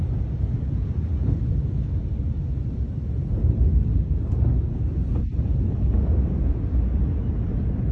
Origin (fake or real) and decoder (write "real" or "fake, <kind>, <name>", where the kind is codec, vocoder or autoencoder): real